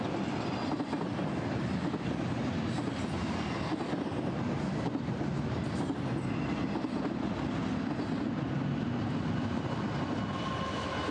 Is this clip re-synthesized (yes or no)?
no